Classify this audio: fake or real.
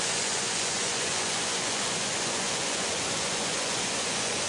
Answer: fake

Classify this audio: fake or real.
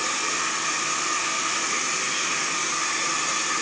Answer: real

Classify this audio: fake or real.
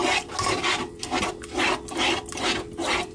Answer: real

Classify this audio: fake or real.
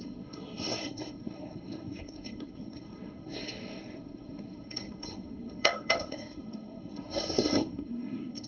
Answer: fake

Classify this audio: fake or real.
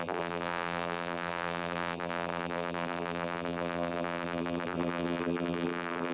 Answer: fake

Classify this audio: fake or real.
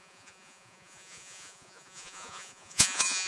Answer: fake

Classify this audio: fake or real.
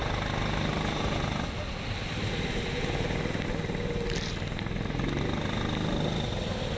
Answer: real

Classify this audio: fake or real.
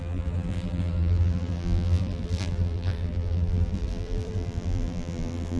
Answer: fake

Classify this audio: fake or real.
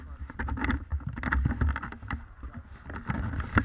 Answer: real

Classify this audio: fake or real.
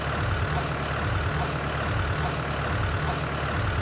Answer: real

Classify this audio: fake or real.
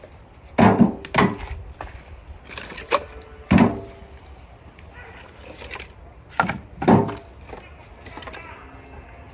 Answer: real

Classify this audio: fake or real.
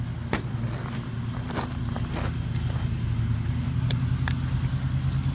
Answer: real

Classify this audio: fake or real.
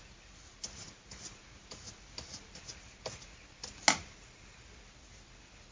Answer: real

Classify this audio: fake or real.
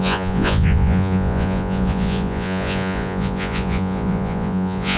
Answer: fake